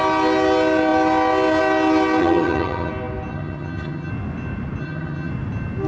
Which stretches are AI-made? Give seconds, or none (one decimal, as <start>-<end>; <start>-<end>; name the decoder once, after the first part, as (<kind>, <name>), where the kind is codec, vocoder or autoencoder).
2.2-2.9 (vocoder, HiFi-GAN); 3.3-4.1; 4.8-5.3